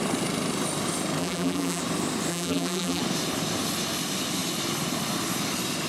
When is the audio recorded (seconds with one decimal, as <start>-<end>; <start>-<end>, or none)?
0.0-1.2; 1.8-2.3; 3.0-5.9